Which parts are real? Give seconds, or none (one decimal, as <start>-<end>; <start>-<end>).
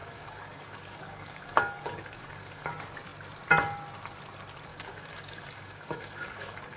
2.7-4.7